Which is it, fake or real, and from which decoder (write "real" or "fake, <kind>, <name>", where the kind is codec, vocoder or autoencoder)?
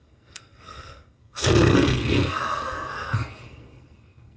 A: fake, codec, SNAC